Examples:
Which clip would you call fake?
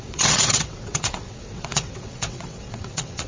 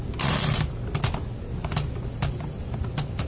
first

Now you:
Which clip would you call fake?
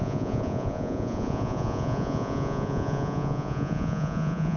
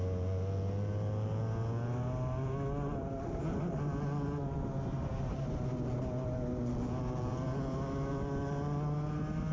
first